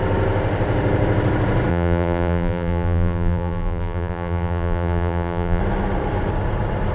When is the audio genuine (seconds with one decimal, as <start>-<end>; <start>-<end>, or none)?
0.0-1.7; 5.6-6.9